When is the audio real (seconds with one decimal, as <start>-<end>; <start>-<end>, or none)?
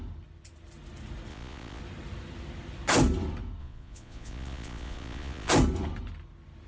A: 0.0-1.3; 1.8-3.6; 5.5-6.7